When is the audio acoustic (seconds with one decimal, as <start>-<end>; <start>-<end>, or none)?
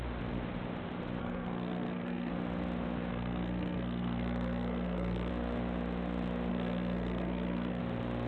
0.0-1.2; 2.3-3.1; 5.3-6.5; 7.8-8.3